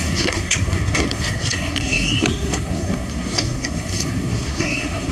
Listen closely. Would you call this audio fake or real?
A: fake